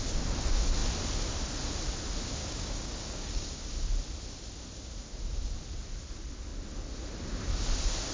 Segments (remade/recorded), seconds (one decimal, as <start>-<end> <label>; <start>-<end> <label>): 0.0-2.4 recorded; 2.4-3.7 remade; 3.7-8.1 recorded